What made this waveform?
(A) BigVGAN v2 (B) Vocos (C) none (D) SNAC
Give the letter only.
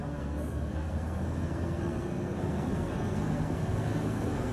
D